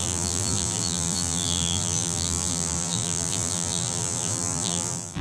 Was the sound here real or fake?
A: fake